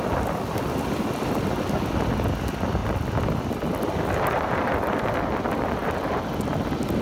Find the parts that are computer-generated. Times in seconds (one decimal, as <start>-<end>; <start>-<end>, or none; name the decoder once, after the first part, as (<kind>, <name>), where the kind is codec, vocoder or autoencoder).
none